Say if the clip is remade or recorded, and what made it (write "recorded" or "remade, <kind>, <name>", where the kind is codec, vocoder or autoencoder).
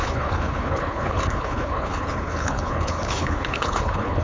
remade, codec, HILCodec